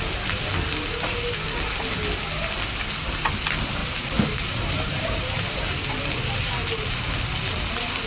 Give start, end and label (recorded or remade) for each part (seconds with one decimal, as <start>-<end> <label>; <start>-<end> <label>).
0.0-3.8 recorded; 3.8-5.9 remade; 5.9-8.1 recorded